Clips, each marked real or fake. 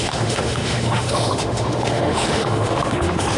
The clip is fake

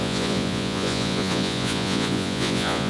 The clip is fake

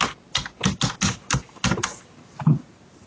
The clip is real